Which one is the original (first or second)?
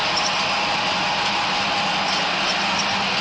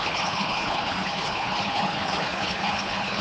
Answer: first